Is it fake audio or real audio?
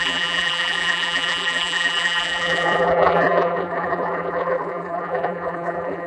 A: fake